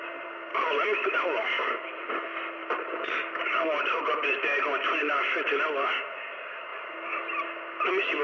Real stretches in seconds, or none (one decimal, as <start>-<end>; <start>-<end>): 0.0-0.5; 2.1-2.6; 5.6-8.2